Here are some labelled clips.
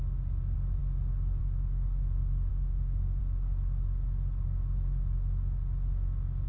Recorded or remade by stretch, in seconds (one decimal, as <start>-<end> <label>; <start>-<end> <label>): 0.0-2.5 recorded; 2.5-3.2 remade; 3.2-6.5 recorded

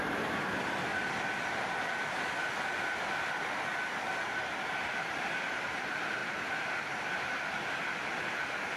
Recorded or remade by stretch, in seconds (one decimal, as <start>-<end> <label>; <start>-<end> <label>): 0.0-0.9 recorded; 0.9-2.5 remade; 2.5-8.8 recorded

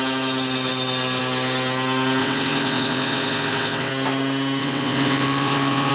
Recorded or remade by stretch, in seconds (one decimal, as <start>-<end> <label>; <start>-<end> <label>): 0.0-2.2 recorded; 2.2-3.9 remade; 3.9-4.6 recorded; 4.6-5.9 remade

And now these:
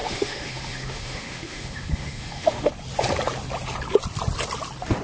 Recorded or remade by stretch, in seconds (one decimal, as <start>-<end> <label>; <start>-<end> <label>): 0.0-2.7 remade; 2.7-5.0 recorded

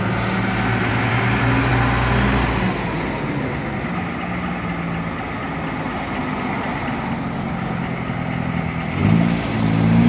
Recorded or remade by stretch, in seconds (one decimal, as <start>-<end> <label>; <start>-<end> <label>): 0.0-10.1 recorded

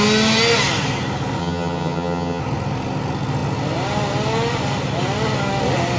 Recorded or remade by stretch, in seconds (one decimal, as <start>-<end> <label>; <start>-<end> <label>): 0.0-1.4 recorded; 1.4-2.4 remade; 2.4-6.0 recorded

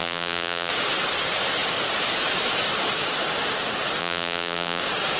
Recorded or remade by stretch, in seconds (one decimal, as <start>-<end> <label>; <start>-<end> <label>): 0.0-0.7 remade; 0.7-4.0 recorded; 4.0-4.8 remade; 4.8-5.2 recorded

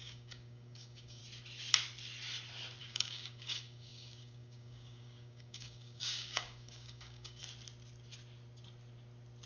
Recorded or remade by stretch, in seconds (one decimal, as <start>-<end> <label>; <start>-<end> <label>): 0.0-1.2 remade; 1.2-2.8 recorded; 2.8-7.4 remade; 7.4-9.5 recorded